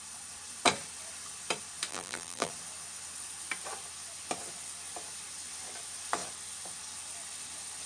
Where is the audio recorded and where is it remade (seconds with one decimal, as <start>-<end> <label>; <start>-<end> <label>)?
0.0-1.9 recorded; 1.9-2.5 remade; 2.5-7.9 recorded